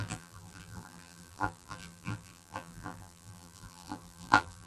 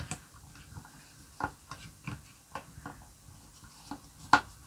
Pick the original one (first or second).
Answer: second